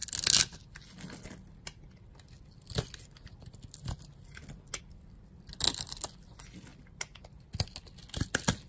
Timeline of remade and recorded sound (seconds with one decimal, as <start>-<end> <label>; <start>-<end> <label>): 0.0-8.7 recorded